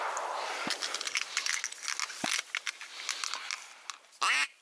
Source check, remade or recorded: recorded